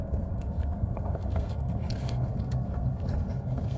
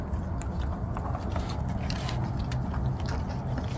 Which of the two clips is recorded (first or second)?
second